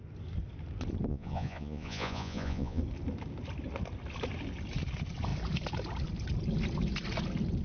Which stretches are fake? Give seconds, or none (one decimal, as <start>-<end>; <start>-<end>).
1.1-2.8